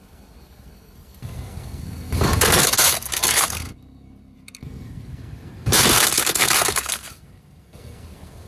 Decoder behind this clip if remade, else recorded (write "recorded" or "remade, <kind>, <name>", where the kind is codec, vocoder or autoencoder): remade, codec, SNAC